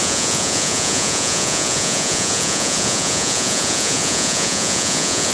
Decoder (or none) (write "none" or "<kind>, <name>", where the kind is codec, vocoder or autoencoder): vocoder, Vocos